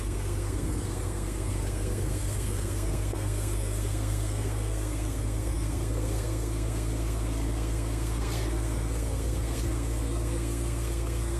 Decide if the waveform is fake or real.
fake